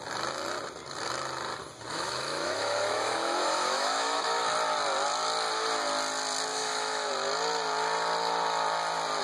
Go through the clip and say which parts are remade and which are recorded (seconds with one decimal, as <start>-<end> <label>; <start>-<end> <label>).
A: 0.0-1.9 recorded; 1.9-4.4 remade; 4.4-6.5 recorded; 6.5-7.1 remade; 7.1-9.2 recorded